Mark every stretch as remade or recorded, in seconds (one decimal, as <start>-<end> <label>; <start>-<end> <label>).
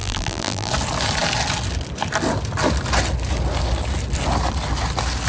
0.0-0.7 remade; 0.7-5.3 recorded